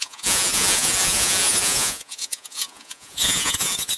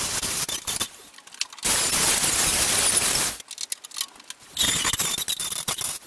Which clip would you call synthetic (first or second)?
first